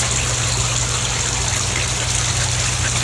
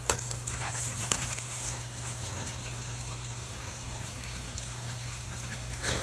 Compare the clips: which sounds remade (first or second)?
second